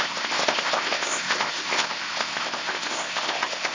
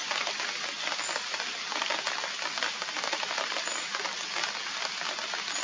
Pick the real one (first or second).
second